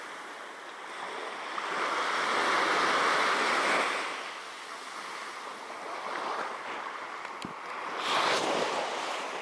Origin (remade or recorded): recorded